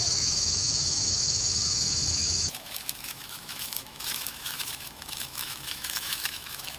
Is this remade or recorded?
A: remade